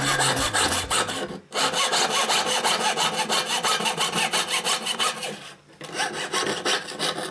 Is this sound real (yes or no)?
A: yes